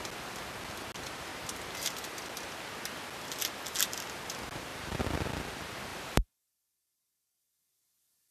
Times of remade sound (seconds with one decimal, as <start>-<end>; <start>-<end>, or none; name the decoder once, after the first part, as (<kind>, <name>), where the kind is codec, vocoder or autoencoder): 5.9-6.5 (vocoder, BigVGAN v2)